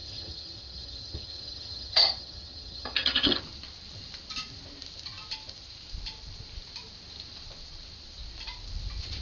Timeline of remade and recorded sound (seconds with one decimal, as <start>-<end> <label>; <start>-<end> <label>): 0.0-3.4 remade; 3.4-9.2 recorded